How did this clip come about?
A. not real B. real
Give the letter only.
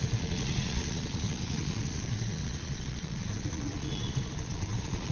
A